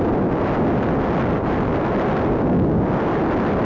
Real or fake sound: real